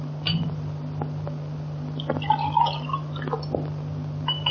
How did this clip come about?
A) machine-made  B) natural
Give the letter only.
B